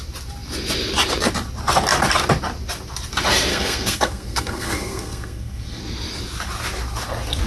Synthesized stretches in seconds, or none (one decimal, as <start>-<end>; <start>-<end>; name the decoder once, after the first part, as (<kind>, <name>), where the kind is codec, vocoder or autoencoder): 3.5-5.8 (codec, SNAC)